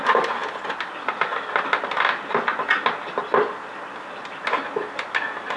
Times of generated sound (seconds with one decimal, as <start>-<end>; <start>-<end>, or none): none